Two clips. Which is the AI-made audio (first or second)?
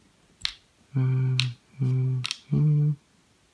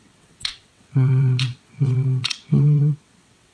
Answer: second